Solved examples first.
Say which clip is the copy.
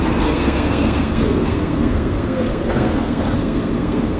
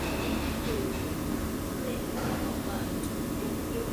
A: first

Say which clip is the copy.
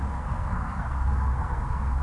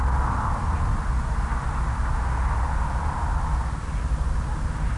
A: first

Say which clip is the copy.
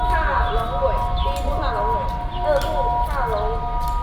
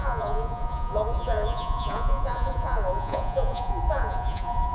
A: second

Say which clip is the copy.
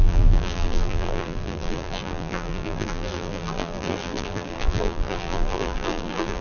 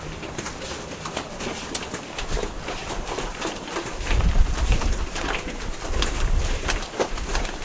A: first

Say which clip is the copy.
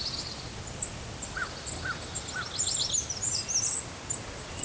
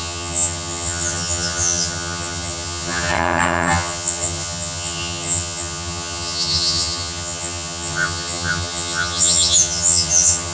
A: second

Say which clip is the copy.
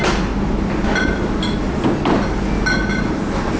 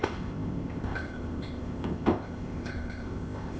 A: second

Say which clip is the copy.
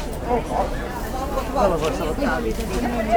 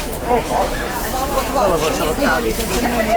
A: second